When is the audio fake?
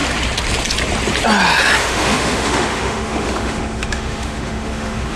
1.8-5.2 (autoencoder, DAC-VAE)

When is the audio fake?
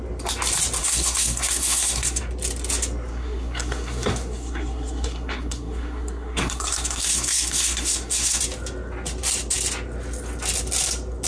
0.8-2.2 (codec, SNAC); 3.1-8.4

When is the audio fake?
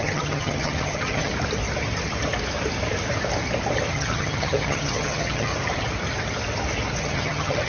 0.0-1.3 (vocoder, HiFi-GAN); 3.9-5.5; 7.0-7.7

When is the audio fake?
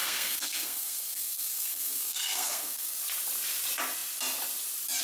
0.0-3.0 (codec, SNAC)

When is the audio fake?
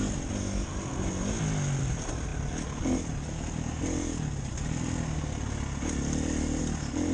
none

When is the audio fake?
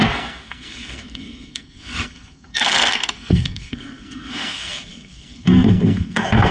0.0-6.5 (codec, SNAC)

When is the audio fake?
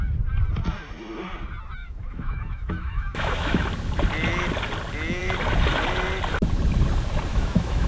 1.8-3.7 (autoencoder, DAC-VAE); 7.3-7.9